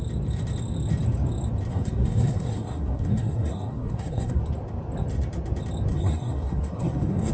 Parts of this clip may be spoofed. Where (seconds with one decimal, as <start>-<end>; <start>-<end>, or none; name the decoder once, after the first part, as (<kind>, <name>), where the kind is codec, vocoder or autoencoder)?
1.7-4.4 (codec, SNAC); 5.9-7.3